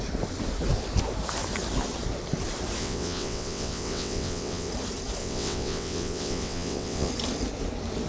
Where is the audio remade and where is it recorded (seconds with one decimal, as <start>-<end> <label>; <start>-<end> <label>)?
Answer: 0.0-2.8 recorded; 2.8-4.7 remade; 4.7-5.2 recorded; 5.2-7.1 remade; 7.1-8.1 recorded